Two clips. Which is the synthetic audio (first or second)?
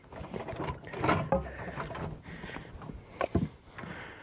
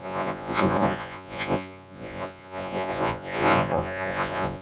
second